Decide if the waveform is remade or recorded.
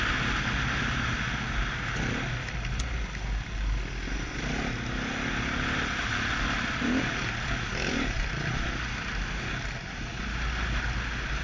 recorded